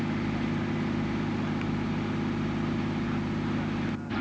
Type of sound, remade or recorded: recorded